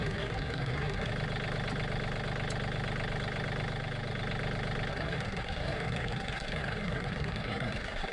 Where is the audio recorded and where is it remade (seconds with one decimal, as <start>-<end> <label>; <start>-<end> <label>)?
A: 0.0-1.1 remade; 1.1-4.9 recorded; 4.9-8.1 remade